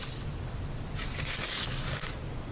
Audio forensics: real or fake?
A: real